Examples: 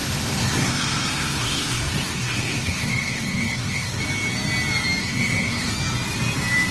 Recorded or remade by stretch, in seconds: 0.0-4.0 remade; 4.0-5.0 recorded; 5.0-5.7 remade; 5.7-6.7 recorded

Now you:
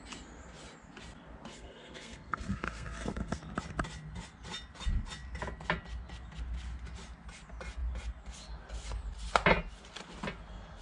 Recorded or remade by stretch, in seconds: 0.0-1.5 recorded; 1.5-3.4 remade; 3.4-10.8 recorded

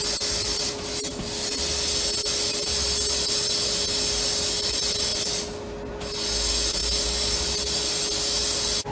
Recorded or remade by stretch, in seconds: 0.0-8.9 recorded

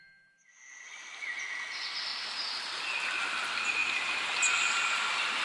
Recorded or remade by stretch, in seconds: 0.0-5.4 recorded

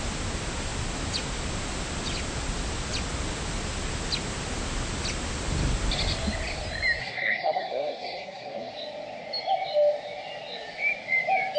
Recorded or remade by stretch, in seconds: 0.0-7.0 recorded; 7.0-8.7 remade; 8.7-11.6 recorded